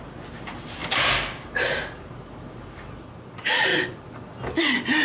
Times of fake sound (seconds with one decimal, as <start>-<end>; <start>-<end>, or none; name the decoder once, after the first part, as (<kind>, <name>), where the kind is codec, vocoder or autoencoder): 0.0-3.7 (vocoder, BigVGAN v2); 4.6-5.0